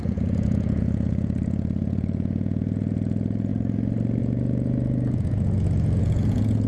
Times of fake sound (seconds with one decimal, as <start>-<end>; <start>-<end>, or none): 0.0-3.5; 4.2-6.7